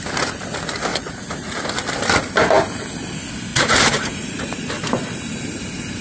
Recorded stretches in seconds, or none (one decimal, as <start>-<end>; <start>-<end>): 0.0-0.9; 1.6-3.5; 4.7-6.0